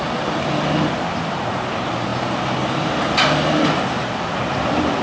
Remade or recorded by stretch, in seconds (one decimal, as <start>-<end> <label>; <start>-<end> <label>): 0.0-5.0 recorded